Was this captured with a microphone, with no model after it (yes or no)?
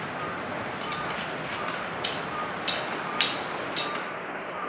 yes